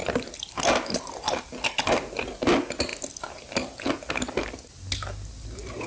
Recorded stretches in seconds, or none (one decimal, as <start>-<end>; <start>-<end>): 0.0-5.9